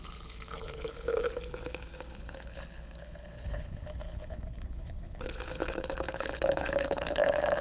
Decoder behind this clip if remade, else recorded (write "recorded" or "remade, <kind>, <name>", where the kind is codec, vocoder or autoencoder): remade, codec, HILCodec